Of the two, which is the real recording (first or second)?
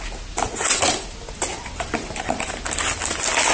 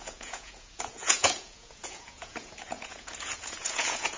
first